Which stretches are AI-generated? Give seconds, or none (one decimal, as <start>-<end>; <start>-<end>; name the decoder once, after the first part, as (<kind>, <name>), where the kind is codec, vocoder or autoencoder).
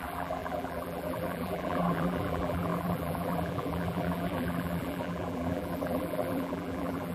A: 0.0-7.1 (vocoder, BigVGAN v2)